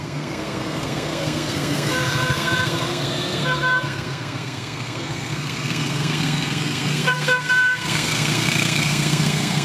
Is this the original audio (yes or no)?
no